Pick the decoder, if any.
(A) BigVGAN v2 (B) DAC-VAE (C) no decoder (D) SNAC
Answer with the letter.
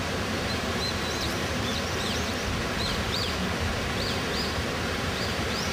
A